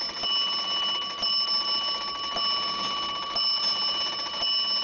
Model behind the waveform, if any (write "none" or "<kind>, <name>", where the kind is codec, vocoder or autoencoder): none